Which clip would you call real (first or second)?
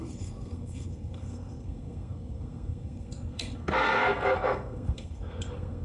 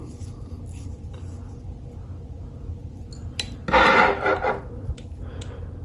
second